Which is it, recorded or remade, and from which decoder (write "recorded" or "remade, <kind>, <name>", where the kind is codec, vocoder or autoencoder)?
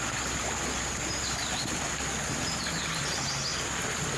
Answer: recorded